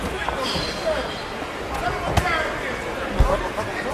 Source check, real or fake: real